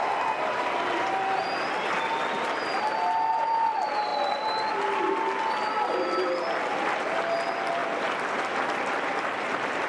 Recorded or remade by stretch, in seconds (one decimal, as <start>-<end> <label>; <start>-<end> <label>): 0.0-9.9 recorded